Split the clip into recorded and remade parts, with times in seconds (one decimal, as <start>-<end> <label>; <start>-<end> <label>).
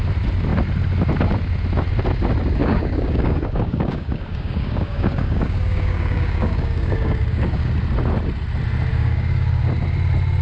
0.0-2.6 recorded; 2.6-7.7 remade; 7.7-8.9 recorded; 8.9-9.6 remade; 9.6-10.4 recorded